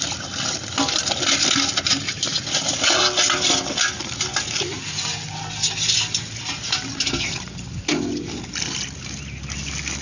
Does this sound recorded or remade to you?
recorded